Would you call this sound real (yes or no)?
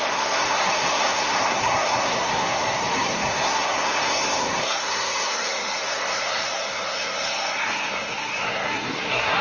no